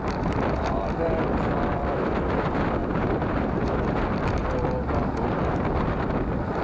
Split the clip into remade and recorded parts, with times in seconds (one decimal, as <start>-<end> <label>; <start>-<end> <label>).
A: 0.0-2.8 recorded; 2.8-4.0 remade; 4.0-4.4 recorded; 4.4-6.0 remade; 6.0-6.6 recorded